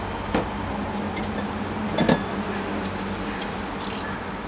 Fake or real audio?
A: real